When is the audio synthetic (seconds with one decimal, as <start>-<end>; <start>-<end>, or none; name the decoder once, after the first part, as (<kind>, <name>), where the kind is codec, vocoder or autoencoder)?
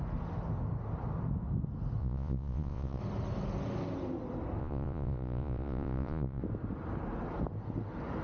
2.0-3.0 (vocoder, Vocos); 4.6-6.4